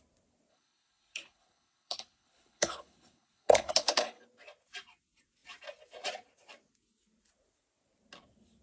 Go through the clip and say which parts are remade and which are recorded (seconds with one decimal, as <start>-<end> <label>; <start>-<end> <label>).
0.0-0.5 recorded; 0.5-4.2 remade; 4.2-8.6 recorded